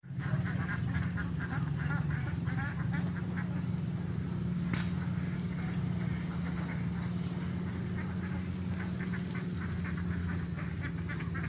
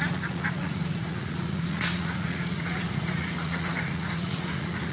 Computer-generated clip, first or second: second